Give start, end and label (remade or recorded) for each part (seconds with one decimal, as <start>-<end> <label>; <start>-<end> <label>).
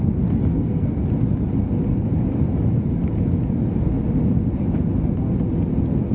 0.0-0.5 recorded; 0.5-1.0 remade; 1.0-6.1 recorded